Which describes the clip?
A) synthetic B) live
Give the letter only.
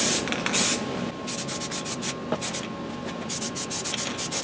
B